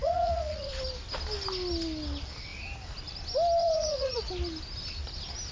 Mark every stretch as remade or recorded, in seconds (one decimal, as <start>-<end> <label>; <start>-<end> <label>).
0.0-0.7 remade; 0.7-3.6 recorded; 3.6-4.3 remade; 4.3-5.5 recorded